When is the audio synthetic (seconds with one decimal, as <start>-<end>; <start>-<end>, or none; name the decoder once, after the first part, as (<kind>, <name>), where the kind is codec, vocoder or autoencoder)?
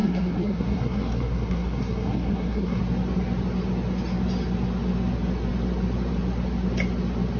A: 0.0-2.8 (codec, SNAC)